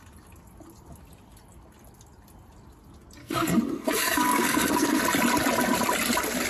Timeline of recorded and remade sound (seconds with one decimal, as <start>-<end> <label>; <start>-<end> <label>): 0.0-3.2 recorded; 3.2-5.0 remade; 5.0-6.5 recorded